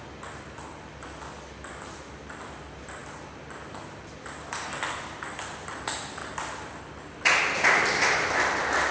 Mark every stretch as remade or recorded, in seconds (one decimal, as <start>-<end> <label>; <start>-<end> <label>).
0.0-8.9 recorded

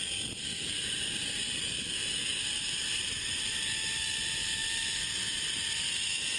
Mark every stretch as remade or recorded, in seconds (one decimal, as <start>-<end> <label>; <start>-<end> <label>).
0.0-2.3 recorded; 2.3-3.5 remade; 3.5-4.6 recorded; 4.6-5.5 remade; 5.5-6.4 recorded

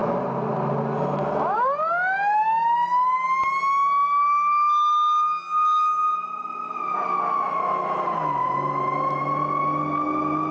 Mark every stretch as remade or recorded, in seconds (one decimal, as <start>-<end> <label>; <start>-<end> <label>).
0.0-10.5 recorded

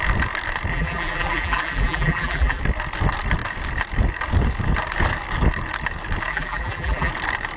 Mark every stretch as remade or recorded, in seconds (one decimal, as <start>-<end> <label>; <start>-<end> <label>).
0.0-0.7 recorded; 0.7-2.6 remade; 2.6-6.3 recorded; 6.3-7.1 remade; 7.1-7.6 recorded

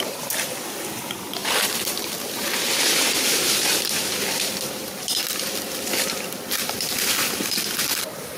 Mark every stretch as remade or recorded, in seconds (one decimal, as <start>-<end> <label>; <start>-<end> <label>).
0.0-8.4 remade

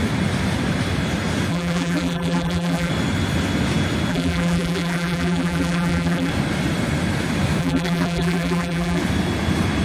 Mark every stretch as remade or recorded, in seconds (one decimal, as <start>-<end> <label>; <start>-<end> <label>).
0.0-1.5 recorded; 1.5-2.9 remade; 2.9-4.1 recorded; 4.1-6.3 remade; 6.3-7.6 recorded; 7.6-9.0 remade; 9.0-9.8 recorded